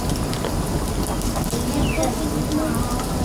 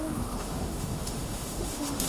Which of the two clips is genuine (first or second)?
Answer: first